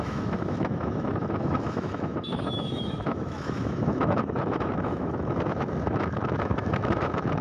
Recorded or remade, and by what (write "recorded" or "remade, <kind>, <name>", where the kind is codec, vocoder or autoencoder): remade, autoencoder, DAC-VAE